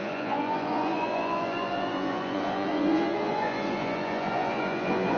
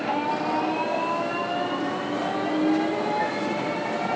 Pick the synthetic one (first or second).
first